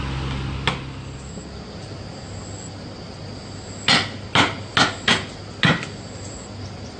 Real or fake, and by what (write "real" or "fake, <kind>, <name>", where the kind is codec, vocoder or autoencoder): real